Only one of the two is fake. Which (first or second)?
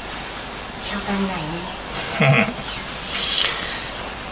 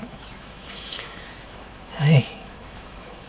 second